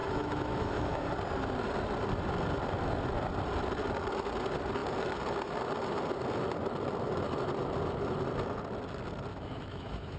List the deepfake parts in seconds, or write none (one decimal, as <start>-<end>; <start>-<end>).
0.0-1.0; 9.3-10.2